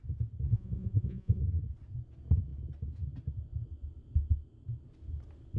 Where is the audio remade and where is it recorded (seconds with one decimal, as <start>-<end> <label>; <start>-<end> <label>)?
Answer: 0.0-0.5 recorded; 0.5-1.4 remade; 1.4-5.6 recorded